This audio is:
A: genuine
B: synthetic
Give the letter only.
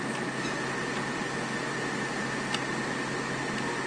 A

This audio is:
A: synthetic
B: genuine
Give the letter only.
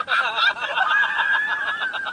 B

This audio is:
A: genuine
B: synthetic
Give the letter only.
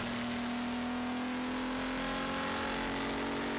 A